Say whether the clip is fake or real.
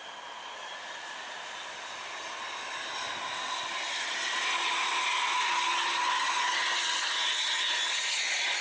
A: real